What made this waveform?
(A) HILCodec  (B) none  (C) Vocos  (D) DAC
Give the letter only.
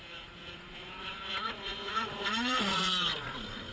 C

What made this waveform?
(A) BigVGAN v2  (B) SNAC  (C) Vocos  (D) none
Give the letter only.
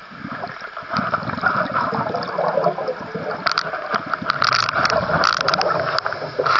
D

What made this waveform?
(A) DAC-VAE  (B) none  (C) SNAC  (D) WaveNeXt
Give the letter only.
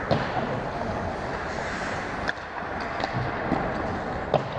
B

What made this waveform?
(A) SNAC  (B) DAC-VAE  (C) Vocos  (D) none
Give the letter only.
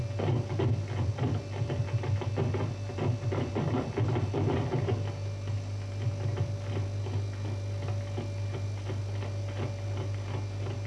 D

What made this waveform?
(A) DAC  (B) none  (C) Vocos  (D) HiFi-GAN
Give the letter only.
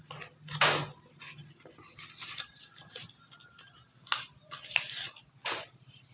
B